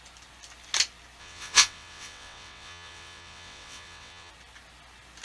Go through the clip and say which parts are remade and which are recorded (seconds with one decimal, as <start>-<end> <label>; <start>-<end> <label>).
0.0-1.2 recorded; 1.2-4.3 remade; 4.3-5.2 recorded